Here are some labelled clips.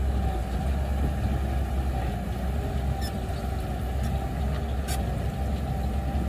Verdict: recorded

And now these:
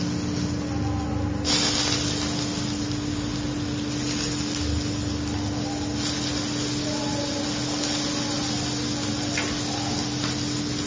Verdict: recorded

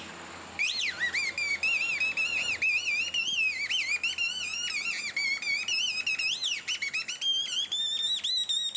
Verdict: recorded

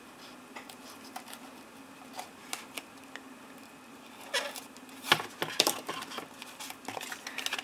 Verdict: recorded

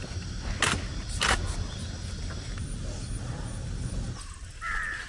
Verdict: recorded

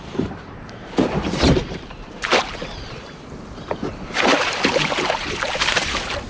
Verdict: remade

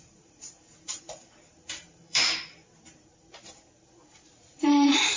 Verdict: remade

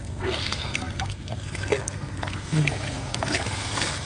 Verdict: remade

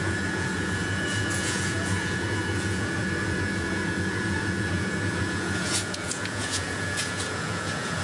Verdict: remade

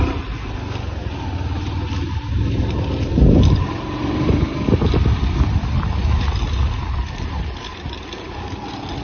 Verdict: recorded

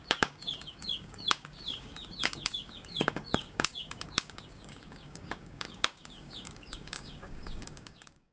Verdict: remade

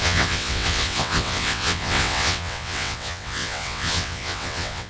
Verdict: remade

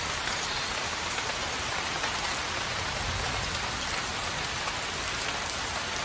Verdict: recorded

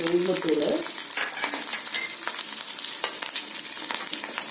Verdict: remade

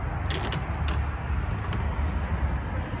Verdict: recorded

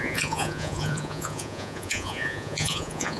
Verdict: remade